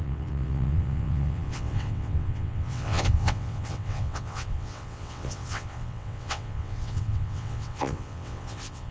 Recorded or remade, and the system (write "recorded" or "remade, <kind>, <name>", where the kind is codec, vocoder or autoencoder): remade, vocoder, WaveNeXt